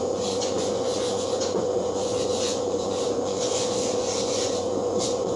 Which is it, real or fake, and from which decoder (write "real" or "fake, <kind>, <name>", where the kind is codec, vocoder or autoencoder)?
fake, vocoder, Vocos